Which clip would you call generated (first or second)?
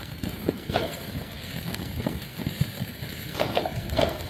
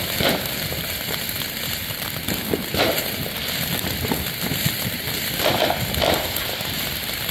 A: first